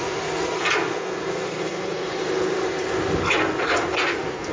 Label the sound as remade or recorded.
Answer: recorded